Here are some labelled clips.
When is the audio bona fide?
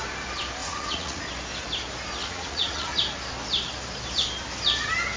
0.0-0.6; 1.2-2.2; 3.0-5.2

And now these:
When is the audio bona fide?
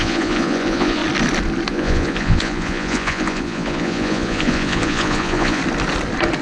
1.0-1.7; 5.6-6.4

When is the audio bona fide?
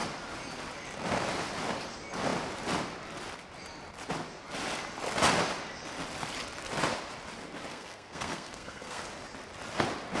0.0-7.7; 9.0-10.2